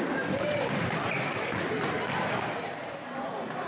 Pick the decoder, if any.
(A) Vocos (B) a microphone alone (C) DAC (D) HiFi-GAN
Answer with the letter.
B